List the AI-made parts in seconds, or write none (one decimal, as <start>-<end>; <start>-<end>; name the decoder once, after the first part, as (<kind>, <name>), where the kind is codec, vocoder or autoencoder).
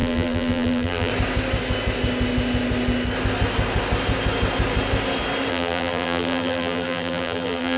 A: 0.0-1.1 (vocoder, BigVGAN v2); 5.5-7.8